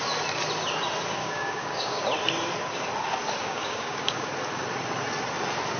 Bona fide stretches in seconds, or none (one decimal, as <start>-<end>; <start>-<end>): 0.0-1.2; 2.0-3.4; 4.3-5.8